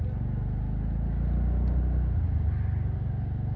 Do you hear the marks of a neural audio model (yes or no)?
no